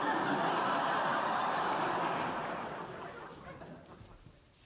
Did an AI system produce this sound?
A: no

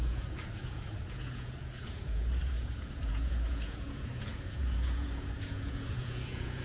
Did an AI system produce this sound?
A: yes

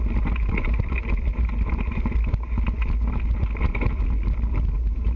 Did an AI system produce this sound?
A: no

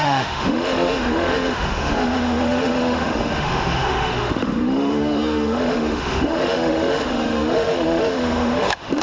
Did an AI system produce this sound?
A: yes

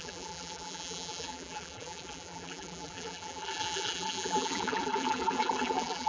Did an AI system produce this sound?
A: yes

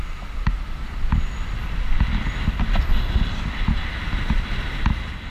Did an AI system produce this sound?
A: no